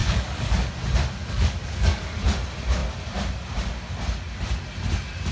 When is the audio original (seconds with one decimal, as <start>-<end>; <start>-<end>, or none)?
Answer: 0.7-1.2; 2.2-5.3